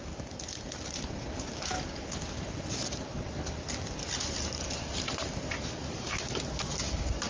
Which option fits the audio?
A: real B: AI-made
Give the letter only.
A